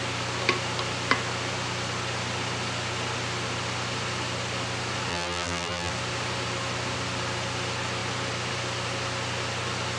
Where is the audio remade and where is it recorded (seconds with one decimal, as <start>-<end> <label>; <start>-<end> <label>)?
0.0-5.1 recorded; 5.1-5.9 remade; 5.9-10.0 recorded